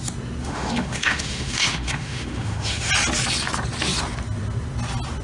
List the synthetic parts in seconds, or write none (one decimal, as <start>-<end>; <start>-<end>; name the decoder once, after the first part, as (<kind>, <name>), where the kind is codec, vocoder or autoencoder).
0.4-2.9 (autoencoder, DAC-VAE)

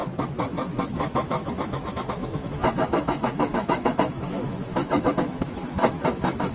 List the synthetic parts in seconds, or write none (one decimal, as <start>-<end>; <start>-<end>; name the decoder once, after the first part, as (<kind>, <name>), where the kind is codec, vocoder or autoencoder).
0.9-6.5 (autoencoder, DAC-VAE)

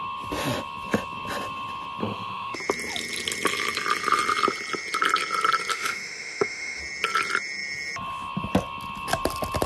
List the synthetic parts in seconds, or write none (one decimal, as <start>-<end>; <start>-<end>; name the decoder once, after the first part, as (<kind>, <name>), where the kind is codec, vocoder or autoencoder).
2.0-2.6 (autoencoder, DAC-VAE); 5.7-6.8

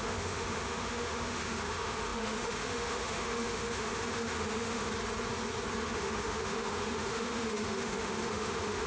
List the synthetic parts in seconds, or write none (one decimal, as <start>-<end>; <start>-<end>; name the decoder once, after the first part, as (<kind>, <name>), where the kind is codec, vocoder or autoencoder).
0.0-4.9 (autoencoder, DAC-VAE); 5.8-8.9

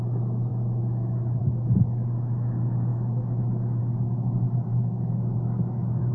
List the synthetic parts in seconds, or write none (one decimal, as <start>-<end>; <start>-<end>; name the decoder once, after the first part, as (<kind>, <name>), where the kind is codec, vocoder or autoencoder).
0.5-1.4 (autoencoder, DAC-VAE); 2.9-3.8; 4.7-6.1